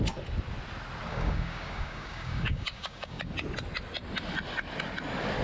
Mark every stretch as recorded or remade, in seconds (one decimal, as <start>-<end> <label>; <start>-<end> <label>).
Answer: 0.0-1.1 recorded; 1.1-3.2 remade; 3.2-5.4 recorded